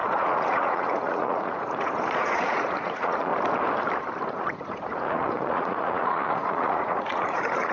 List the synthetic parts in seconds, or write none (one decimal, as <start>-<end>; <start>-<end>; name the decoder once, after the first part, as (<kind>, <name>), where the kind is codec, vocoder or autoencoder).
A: 0.0-3.3 (vocoder, Vocos); 4.3-7.7